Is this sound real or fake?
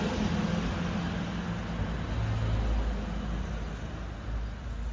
real